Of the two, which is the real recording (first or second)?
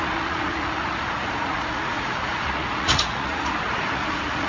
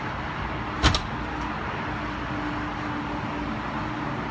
second